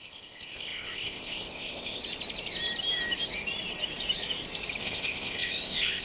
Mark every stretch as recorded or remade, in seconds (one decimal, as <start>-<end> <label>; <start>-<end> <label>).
0.0-2.0 remade; 2.0-4.8 recorded; 4.8-6.0 remade